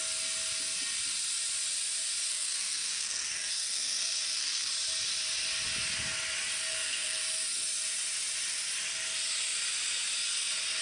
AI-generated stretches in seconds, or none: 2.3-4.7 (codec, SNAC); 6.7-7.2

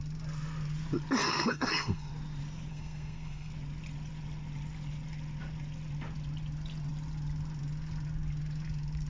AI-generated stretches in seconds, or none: 1.2-2.1 (codec, SNAC); 2.7-3.5

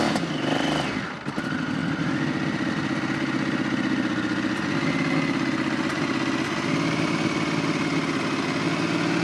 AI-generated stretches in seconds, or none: none